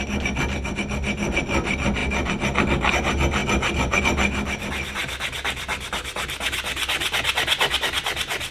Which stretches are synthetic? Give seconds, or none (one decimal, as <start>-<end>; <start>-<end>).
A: none